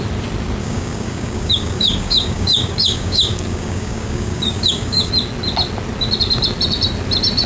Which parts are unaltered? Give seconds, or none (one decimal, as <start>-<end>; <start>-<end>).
0.0-0.6; 5.1-7.5